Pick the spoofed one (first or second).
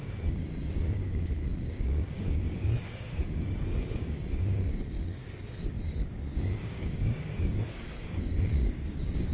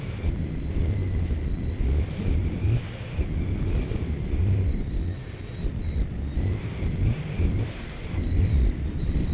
first